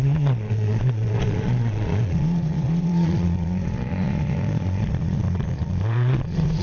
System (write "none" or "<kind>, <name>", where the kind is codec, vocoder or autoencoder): vocoder, Vocos